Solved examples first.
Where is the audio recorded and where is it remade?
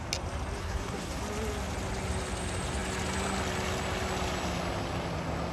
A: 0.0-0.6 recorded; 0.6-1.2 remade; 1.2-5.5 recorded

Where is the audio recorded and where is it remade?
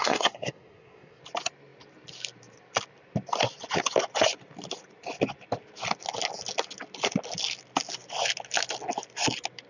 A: 0.0-1.2 remade; 1.2-9.7 recorded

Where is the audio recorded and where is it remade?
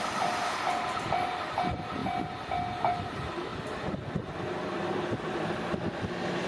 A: 0.0-2.0 remade; 2.0-3.1 recorded; 3.1-3.5 remade; 3.5-6.5 recorded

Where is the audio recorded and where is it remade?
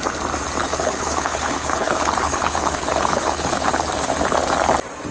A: 0.0-0.6 recorded; 0.6-3.7 remade; 3.7-5.1 recorded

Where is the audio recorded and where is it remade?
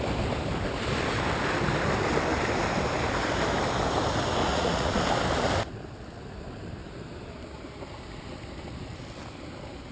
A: 0.0-4.4 recorded; 4.4-5.0 remade; 5.0-9.9 recorded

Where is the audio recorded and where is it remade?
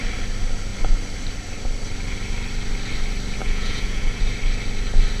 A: 0.0-3.4 recorded; 3.4-4.2 remade; 4.2-5.2 recorded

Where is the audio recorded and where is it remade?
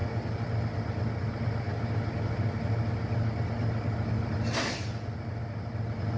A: 0.0-6.2 recorded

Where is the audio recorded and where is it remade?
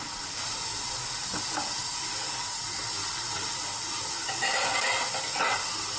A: 0.0-6.0 recorded